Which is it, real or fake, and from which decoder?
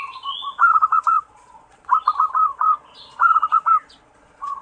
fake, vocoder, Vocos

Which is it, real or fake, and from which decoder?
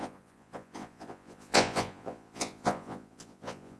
fake, vocoder, Vocos